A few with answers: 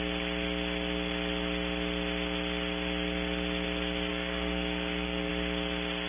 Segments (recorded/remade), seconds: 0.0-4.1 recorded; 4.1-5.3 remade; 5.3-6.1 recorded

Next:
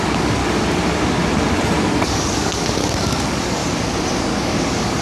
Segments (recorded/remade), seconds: 0.0-0.4 remade; 0.4-1.8 recorded; 1.8-3.6 remade; 3.6-4.2 recorded; 4.2-5.0 remade

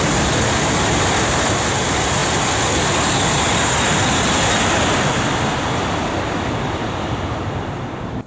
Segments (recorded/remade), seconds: 0.0-8.3 recorded

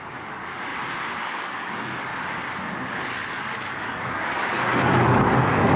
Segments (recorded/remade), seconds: 0.0-0.7 remade; 0.7-1.2 recorded; 1.2-2.1 remade; 2.1-2.9 recorded; 2.9-5.8 remade

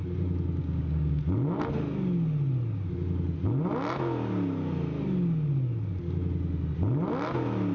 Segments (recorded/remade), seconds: 0.0-0.6 recorded; 0.6-1.2 remade; 1.2-7.7 recorded

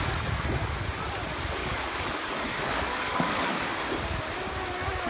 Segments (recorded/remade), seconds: 0.0-1.6 recorded; 1.6-4.2 remade; 4.2-5.1 recorded